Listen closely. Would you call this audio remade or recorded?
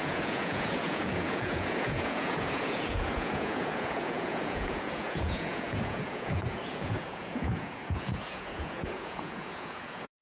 remade